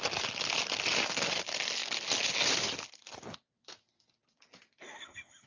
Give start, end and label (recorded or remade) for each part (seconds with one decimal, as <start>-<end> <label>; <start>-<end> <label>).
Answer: 0.0-5.5 recorded